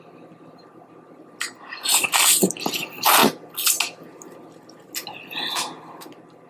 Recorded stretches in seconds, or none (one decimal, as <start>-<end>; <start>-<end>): 0.0-6.5